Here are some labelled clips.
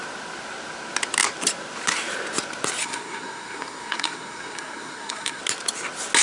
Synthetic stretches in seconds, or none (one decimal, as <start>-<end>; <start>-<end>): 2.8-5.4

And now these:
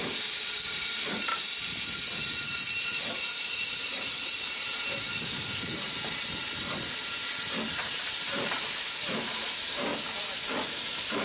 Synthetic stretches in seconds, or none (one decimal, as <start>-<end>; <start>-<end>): 0.0-6.4; 6.9-11.2

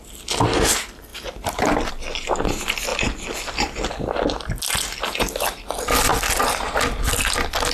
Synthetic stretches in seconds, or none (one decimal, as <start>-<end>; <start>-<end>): none

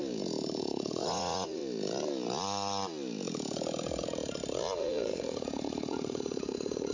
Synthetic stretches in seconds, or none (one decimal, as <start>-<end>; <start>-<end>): 0.6-1.6; 4.8-6.9

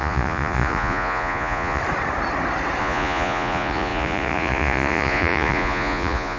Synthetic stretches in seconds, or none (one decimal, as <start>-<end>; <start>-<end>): 0.0-1.8; 2.8-6.4

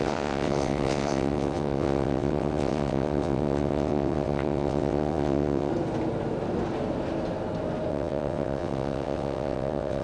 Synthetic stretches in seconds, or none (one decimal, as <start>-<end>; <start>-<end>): 0.0-5.7; 7.9-10.0

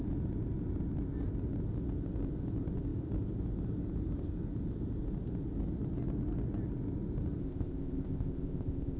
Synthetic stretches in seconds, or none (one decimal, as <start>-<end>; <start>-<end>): 7.4-9.0

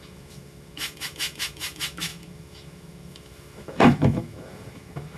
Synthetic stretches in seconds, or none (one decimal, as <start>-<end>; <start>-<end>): 0.0-5.2